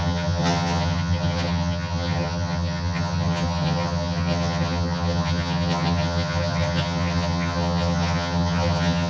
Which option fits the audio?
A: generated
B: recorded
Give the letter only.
A